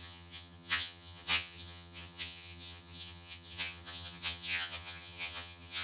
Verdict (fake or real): fake